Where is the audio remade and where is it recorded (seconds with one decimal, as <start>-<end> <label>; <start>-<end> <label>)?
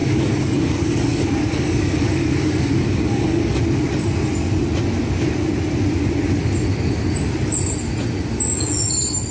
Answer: 0.0-3.6 remade; 3.6-9.3 recorded